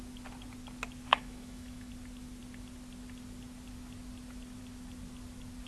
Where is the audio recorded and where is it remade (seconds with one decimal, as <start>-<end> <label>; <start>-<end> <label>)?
0.0-1.1 recorded; 1.1-1.9 remade; 1.9-5.7 recorded